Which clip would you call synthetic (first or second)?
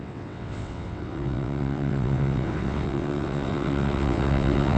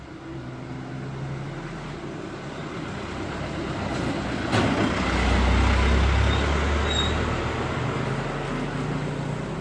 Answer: first